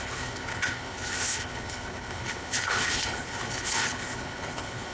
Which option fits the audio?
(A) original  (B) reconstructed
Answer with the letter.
B